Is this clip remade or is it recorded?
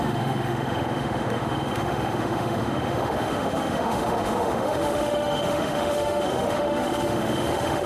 remade